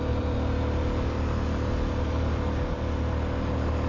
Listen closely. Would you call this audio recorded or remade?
recorded